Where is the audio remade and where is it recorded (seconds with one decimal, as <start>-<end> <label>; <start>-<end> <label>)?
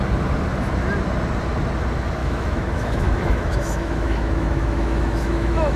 0.0-2.2 recorded; 2.2-5.8 remade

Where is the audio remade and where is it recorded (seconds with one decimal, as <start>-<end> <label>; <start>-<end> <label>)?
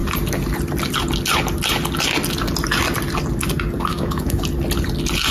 0.0-3.9 recorded; 3.9-4.4 remade; 4.4-5.3 recorded